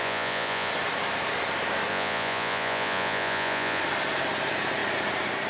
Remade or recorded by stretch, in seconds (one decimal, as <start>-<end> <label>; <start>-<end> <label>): 0.0-0.7 remade; 0.7-1.9 recorded; 1.9-3.8 remade; 3.8-5.5 recorded